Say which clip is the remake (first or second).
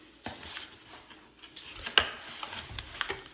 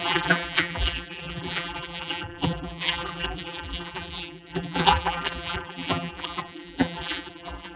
second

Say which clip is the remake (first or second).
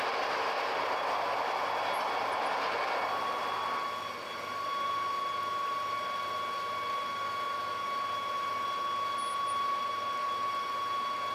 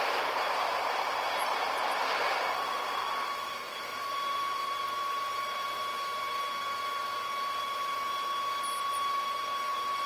second